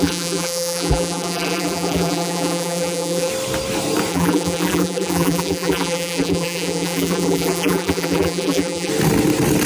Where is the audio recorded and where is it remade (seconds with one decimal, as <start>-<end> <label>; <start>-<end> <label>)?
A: 0.0-3.3 remade; 3.3-4.1 recorded; 4.1-8.9 remade; 8.9-9.7 recorded